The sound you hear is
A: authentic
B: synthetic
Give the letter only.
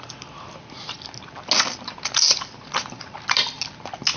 A